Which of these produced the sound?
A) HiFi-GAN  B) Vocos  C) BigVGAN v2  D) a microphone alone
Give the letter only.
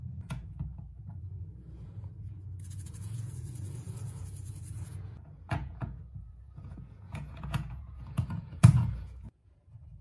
B